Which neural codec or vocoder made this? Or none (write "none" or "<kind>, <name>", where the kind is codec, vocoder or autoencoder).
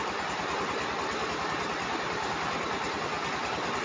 none